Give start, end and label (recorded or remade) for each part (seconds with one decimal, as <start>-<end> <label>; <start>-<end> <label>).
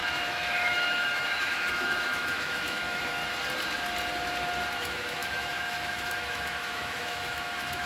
0.0-3.2 remade; 3.2-4.7 recorded; 4.7-7.9 remade